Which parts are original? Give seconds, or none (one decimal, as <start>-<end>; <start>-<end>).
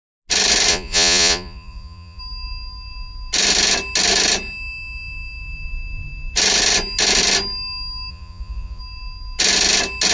0.0-0.7; 2.2-8.1; 8.8-10.1